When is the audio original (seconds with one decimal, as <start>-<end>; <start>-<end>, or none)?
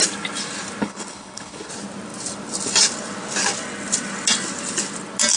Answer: 0.0-0.8; 1.7-5.4